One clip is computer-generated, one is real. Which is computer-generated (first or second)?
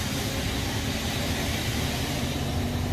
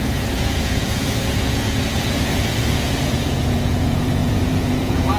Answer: second